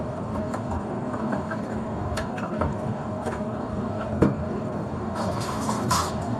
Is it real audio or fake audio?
fake